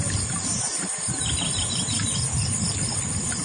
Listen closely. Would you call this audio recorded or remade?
recorded